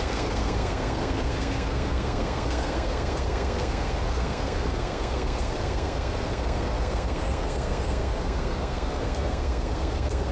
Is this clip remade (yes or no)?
yes